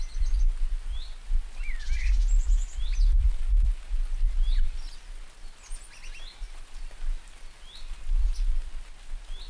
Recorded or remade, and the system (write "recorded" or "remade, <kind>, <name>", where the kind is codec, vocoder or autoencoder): recorded